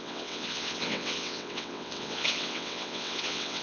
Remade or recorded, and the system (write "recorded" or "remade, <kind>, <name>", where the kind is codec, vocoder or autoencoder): remade, vocoder, WaveNeXt